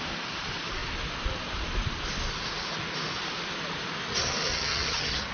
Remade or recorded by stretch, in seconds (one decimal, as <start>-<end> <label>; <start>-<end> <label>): 0.0-4.5 recorded; 4.5-5.3 remade